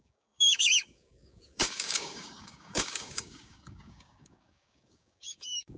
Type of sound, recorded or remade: remade